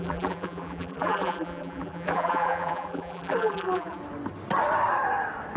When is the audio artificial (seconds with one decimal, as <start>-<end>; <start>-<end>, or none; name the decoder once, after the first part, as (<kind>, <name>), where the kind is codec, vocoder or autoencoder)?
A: 0.0-4.0 (vocoder, BigVGAN v2)